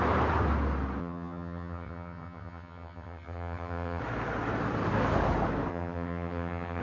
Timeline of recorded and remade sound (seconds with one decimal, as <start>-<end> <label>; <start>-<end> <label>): 0.0-1.0 recorded; 1.0-4.0 remade; 4.0-5.7 recorded; 5.7-6.8 remade